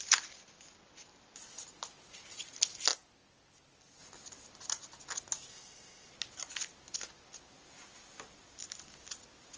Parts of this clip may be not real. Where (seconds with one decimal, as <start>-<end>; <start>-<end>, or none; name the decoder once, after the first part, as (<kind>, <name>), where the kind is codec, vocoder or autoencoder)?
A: 5.5-6.1 (codec, ZipCodec)